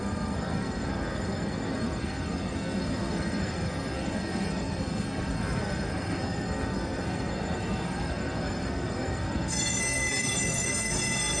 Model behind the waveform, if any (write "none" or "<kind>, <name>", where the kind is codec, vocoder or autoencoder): codec, SNAC